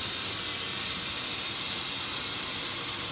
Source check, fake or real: real